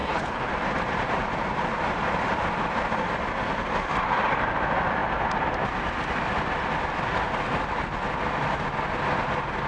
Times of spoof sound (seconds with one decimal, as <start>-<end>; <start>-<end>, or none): 0.0-0.5